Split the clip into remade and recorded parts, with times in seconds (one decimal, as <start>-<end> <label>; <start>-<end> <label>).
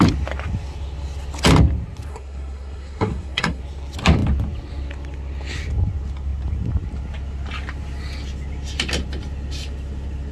0.0-2.1 recorded; 2.1-3.6 remade; 3.6-10.3 recorded